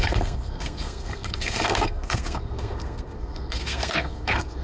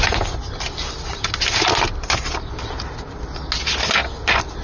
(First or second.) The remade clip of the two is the first